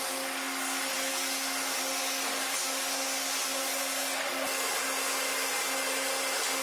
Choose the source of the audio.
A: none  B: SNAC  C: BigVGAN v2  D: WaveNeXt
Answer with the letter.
A